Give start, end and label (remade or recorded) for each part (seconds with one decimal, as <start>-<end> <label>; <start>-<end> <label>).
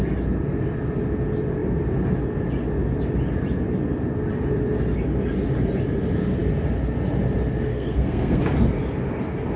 0.0-7.7 recorded; 7.7-8.4 remade; 8.4-9.6 recorded